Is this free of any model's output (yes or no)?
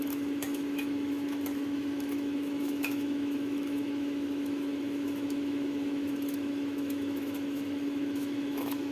no